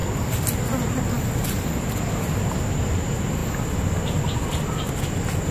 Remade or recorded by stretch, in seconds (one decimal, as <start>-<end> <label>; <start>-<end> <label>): 0.0-5.5 recorded